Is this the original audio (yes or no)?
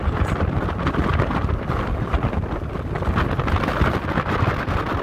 yes